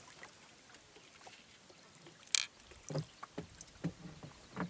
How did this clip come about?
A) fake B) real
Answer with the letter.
B